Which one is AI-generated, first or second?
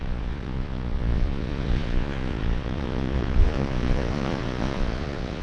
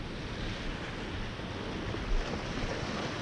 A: first